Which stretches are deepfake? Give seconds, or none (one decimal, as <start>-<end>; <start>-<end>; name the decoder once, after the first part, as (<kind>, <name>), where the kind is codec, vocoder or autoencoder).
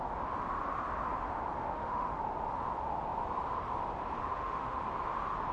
1.6-2.2 (autoencoder, DAC-VAE); 4.2-4.8